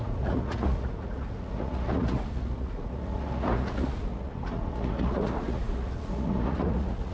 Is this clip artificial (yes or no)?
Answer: yes